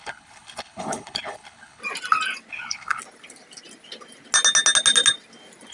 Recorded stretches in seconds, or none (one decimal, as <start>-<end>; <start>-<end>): 1.8-2.5; 3.0-5.7